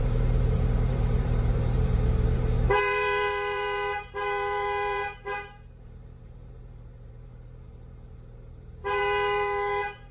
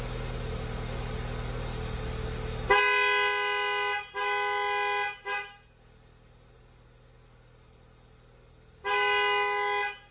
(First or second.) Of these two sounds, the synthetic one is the first